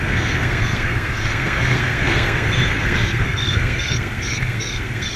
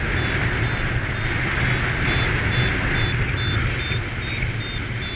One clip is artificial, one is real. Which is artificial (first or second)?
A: first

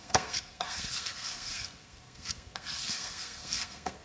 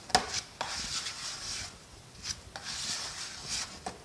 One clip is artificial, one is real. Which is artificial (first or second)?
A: first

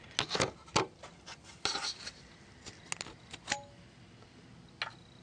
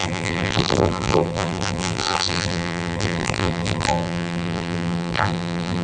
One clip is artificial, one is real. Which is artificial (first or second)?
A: second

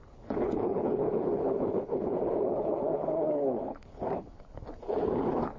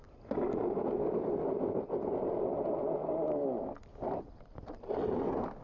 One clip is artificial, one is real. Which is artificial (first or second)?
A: first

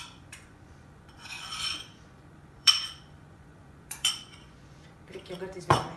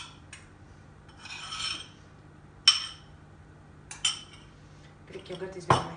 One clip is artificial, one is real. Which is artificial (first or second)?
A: first